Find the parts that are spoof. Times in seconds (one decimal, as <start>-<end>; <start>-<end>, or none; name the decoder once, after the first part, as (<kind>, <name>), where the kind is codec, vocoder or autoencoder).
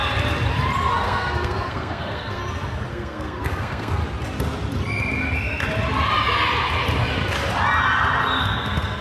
0.9-2.4 (codec, SNAC); 2.9-4.0; 8.4-9.0